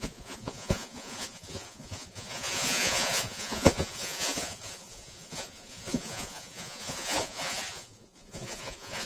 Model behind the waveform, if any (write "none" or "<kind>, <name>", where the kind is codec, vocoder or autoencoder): vocoder, Vocos